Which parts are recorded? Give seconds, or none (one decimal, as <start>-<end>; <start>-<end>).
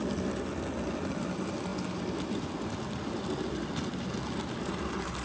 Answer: 0.0-5.2